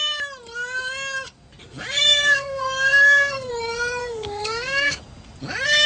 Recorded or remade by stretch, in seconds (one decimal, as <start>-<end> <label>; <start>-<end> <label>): 0.0-2.1 recorded; 2.1-3.5 remade; 3.5-4.0 recorded; 4.0-5.0 remade; 5.0-5.9 recorded